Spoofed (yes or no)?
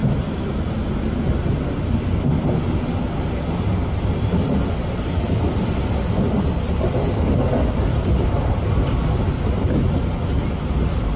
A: no